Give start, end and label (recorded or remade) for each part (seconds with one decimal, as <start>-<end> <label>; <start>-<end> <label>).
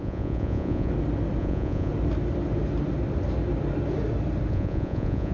0.0-0.9 remade; 0.9-1.4 recorded; 1.4-1.9 remade; 1.9-4.5 recorded; 4.5-5.3 remade